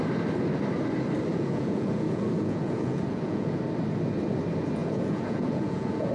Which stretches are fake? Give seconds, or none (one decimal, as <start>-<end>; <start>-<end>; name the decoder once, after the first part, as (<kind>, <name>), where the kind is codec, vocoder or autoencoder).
1.3-3.6 (vocoder, Vocos); 4.8-6.1